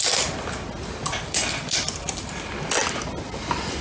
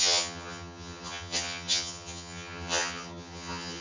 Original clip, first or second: first